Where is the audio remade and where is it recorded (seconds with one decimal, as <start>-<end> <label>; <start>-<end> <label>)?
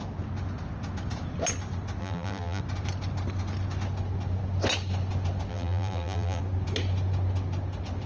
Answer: 0.0-2.0 recorded; 2.0-2.6 remade; 2.6-5.5 recorded; 5.5-6.4 remade; 6.4-8.1 recorded